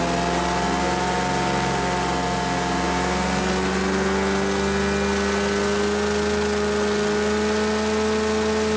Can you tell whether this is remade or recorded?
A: recorded